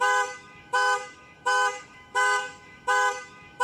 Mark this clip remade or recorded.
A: remade